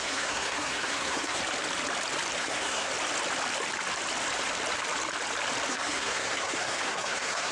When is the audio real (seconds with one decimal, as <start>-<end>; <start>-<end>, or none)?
1.4-2.4; 2.9-5.7